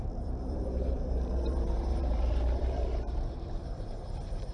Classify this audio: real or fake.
fake